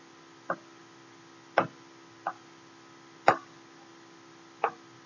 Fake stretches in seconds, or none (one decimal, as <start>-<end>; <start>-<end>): none